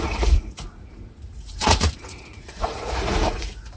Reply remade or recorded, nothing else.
remade